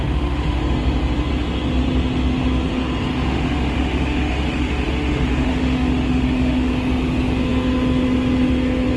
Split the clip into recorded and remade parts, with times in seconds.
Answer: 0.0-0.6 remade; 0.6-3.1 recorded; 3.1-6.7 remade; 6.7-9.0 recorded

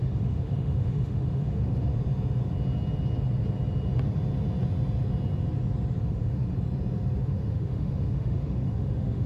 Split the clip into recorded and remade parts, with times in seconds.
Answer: 0.0-1.9 remade; 1.9-6.1 recorded; 6.1-6.5 remade; 6.5-7.2 recorded; 7.2-9.3 remade

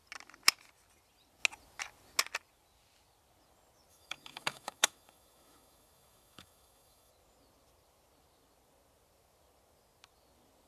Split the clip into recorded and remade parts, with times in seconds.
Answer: 0.0-3.9 recorded; 3.9-7.1 remade; 7.1-10.7 recorded

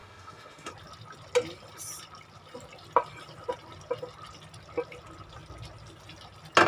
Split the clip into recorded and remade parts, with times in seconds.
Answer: 0.0-0.7 remade; 0.7-6.7 recorded